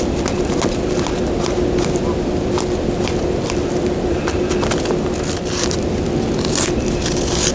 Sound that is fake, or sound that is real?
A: real